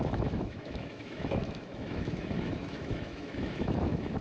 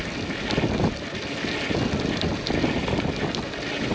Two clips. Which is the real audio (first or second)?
second